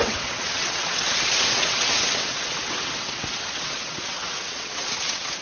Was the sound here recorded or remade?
remade